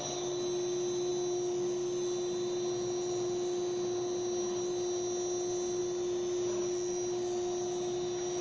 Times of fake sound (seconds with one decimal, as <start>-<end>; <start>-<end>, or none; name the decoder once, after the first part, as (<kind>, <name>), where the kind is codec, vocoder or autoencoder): none